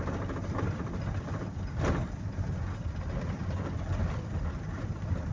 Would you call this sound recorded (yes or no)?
yes